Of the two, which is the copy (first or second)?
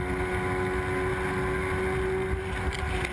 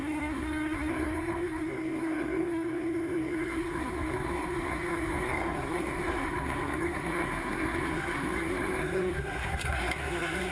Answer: second